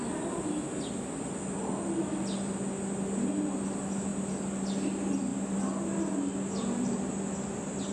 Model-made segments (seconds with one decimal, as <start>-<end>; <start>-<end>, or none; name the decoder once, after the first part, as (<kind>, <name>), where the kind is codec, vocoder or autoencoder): none